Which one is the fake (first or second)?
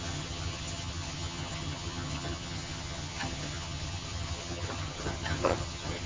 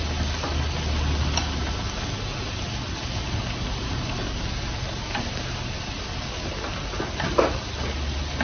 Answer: first